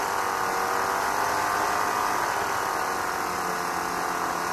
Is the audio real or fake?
real